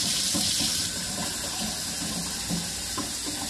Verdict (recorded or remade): recorded